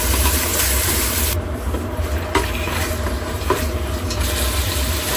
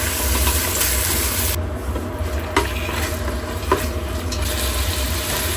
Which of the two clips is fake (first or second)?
first